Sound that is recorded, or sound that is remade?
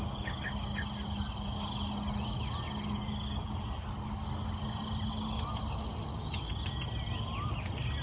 recorded